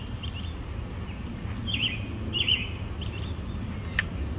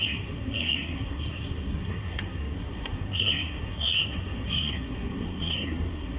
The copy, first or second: second